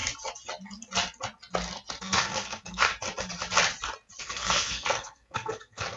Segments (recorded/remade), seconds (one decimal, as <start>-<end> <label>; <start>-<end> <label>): 0.0-2.0 recorded; 2.0-2.9 remade; 2.9-4.2 recorded; 4.2-6.0 remade